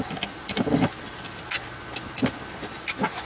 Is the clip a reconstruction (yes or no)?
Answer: no